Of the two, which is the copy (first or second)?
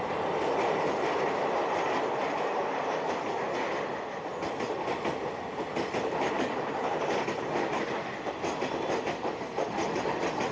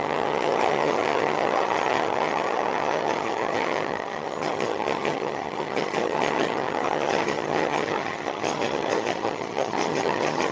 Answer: second